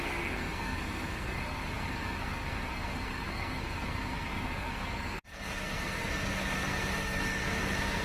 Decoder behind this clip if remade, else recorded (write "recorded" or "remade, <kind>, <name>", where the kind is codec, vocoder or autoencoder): remade, codec, SNAC